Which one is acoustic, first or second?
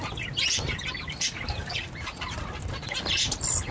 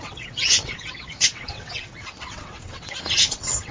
first